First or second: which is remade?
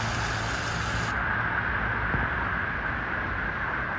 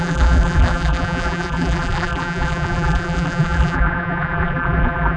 second